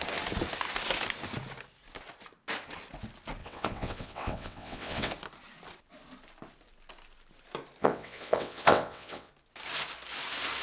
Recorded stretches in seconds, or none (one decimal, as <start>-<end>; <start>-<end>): 0.0-3.4; 5.1-7.8; 9.3-10.6